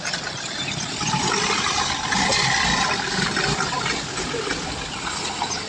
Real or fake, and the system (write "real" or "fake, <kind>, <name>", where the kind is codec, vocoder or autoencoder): real